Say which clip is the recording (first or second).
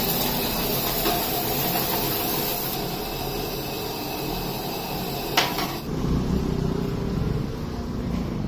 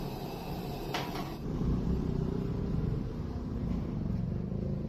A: first